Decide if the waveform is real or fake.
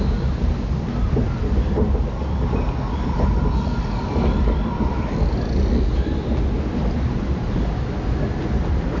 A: real